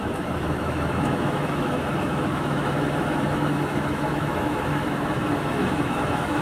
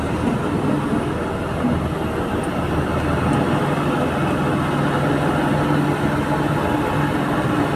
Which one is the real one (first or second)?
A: second